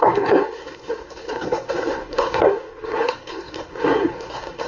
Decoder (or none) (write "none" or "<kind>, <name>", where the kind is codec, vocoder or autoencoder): codec, SNAC